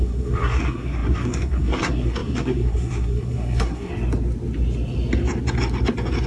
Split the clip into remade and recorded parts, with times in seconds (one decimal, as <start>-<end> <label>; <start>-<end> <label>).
0.0-3.9 remade; 3.9-6.3 recorded